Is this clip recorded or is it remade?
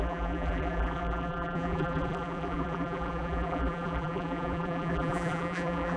remade